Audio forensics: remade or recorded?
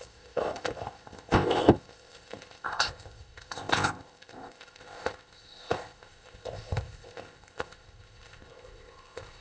remade